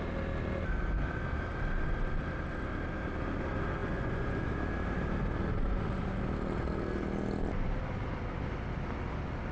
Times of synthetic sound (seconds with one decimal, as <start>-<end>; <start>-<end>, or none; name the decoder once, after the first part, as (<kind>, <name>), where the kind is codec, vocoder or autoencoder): 3.8-4.5 (vocoder, Vocos)